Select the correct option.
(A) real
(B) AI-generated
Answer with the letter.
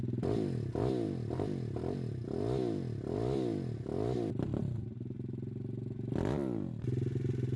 A